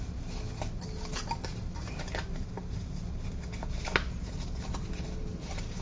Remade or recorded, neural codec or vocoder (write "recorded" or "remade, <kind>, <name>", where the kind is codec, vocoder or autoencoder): recorded